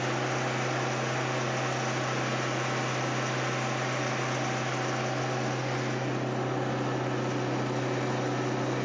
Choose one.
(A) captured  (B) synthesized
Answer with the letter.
A